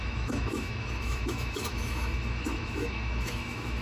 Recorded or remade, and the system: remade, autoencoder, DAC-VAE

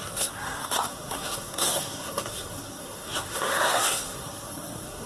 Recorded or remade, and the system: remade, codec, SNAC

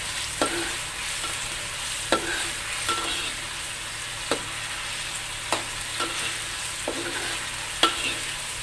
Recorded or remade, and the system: recorded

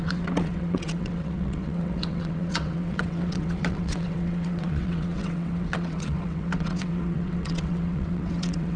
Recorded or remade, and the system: remade, vocoder, WaveNeXt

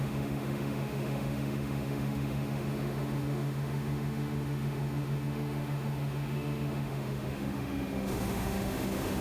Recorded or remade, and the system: remade, autoencoder, DAC-VAE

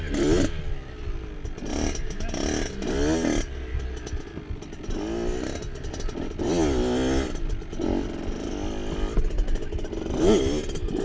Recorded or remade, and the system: recorded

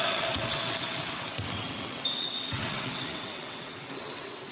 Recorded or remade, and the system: remade, vocoder, WaveNeXt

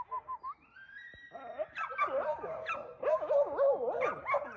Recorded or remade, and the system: recorded